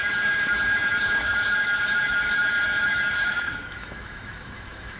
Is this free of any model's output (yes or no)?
no